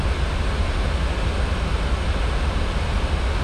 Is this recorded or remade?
recorded